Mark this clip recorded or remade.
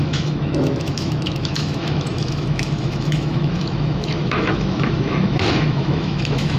remade